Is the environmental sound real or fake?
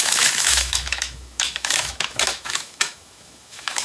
fake